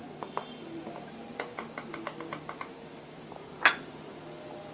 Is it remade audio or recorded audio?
recorded